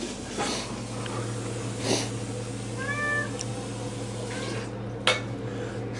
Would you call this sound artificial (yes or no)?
no